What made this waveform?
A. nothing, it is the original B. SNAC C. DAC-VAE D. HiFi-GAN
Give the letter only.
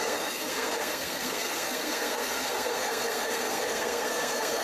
B